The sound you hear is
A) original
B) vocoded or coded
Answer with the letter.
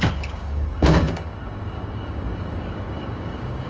B